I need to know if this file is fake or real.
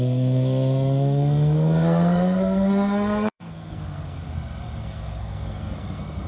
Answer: fake